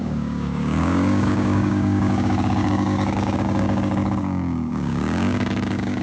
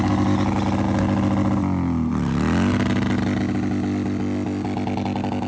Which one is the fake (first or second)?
first